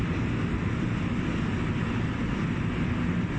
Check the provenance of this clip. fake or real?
real